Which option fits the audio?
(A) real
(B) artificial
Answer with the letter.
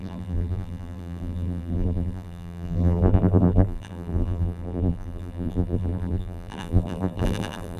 B